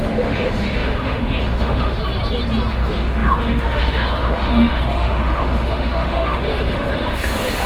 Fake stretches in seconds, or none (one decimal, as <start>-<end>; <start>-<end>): 0.0-2.0; 2.7-7.7